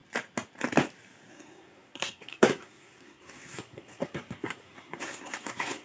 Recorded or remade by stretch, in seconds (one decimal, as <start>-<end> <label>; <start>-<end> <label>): 0.0-1.3 recorded; 1.3-5.8 remade